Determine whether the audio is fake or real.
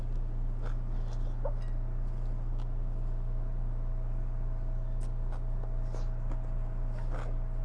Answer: real